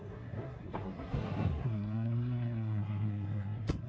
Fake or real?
fake